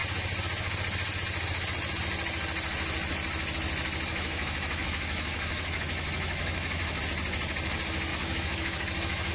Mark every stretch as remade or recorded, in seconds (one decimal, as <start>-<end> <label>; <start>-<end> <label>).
0.0-4.1 recorded; 4.1-7.0 remade; 7.0-8.1 recorded; 8.1-9.3 remade